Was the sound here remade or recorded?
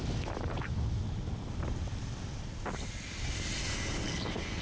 recorded